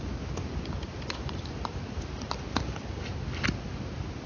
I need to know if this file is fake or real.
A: real